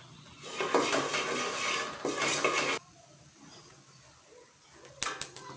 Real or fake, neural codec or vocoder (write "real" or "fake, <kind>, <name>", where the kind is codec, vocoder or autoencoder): real